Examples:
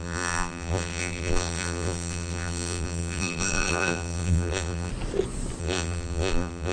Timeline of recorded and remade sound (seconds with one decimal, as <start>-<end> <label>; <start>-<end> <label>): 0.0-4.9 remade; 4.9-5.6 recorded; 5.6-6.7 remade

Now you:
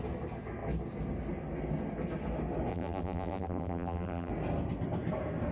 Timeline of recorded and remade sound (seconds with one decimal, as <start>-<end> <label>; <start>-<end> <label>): 0.0-2.7 recorded; 2.7-4.3 remade; 4.3-5.5 recorded

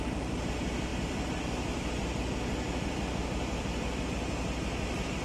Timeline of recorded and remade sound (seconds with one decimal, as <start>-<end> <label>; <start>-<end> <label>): 0.0-0.9 recorded; 0.9-4.0 remade; 4.0-5.2 recorded